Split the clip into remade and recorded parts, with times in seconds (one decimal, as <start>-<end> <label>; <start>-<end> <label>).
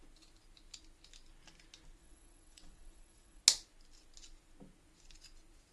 0.0-2.0 recorded; 2.0-3.4 remade; 3.4-5.7 recorded